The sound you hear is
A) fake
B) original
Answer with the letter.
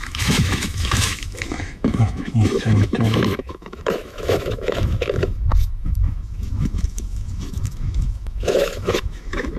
A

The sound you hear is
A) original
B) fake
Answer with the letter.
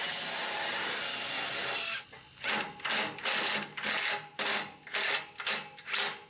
A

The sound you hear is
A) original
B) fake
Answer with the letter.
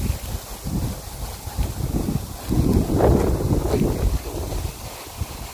A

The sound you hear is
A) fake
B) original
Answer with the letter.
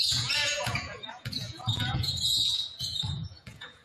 A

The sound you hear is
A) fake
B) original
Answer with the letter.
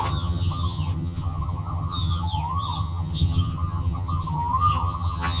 A